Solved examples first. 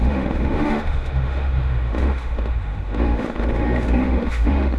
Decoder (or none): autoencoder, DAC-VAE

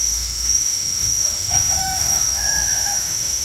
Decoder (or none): autoencoder, DAC-VAE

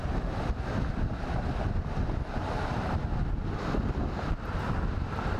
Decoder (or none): none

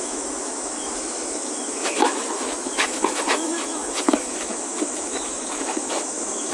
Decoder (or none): autoencoder, DAC-VAE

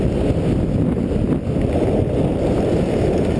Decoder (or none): none